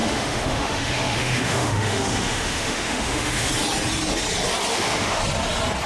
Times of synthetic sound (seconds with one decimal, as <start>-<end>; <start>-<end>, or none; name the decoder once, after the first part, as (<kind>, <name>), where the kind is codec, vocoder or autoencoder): 0.0-3.5 (autoencoder, DAC-VAE); 4.7-5.2